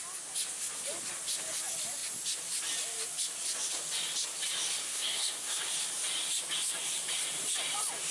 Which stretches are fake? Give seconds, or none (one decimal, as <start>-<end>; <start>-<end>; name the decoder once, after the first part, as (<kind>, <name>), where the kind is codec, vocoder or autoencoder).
4.8-5.6 (codec, SNAC)